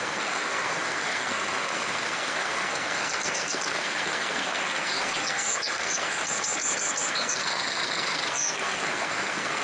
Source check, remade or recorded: remade